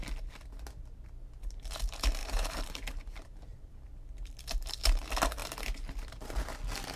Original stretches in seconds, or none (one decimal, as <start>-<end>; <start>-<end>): 0.0-2.2; 3.9-7.0